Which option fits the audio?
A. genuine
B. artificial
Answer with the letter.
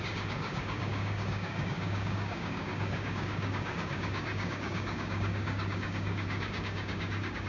B